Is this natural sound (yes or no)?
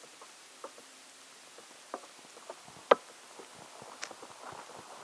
yes